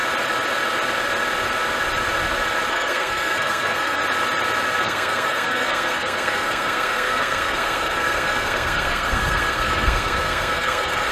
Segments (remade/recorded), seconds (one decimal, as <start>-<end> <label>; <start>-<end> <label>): 0.0-2.7 recorded; 2.7-4.0 remade; 4.0-4.8 recorded; 4.8-11.1 remade